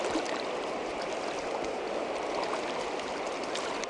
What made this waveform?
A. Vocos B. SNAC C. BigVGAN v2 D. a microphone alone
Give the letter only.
D